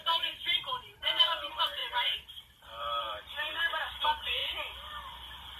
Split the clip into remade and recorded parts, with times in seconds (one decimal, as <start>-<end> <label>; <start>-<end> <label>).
0.0-0.9 remade; 0.9-1.4 recorded; 1.4-1.8 remade; 1.8-2.6 recorded; 2.6-5.6 remade